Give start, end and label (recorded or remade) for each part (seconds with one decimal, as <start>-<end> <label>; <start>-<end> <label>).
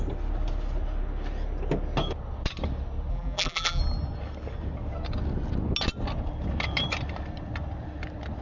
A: 0.0-3.1 recorded; 3.1-3.8 remade; 3.8-8.4 recorded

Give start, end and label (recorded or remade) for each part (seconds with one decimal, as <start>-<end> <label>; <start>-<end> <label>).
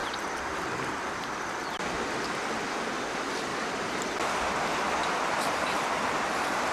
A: 0.0-1.3 remade; 1.3-3.5 recorded; 3.5-4.3 remade; 4.3-5.0 recorded; 5.0-6.3 remade; 6.3-6.7 recorded